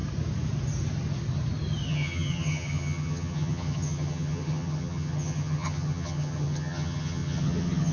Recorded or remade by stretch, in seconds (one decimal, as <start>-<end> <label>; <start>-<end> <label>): 0.0-1.9 recorded; 1.9-7.9 remade

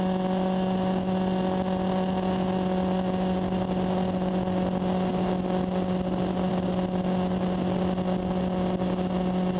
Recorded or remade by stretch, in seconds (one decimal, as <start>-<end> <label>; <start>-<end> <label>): 0.0-9.6 recorded

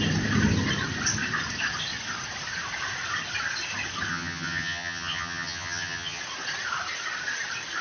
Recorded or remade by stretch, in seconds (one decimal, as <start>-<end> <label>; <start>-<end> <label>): 0.0-4.1 recorded; 4.1-6.2 remade; 6.2-7.8 recorded

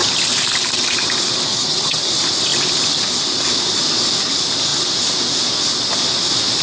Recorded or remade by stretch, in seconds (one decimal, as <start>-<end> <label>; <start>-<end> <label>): 0.0-1.5 recorded; 1.5-2.1 remade; 2.1-6.6 recorded

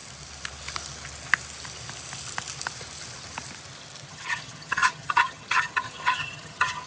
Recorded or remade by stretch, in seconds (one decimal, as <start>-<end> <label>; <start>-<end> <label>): 0.0-4.1 recorded; 4.1-6.9 remade